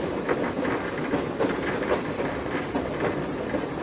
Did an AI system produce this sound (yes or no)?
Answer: no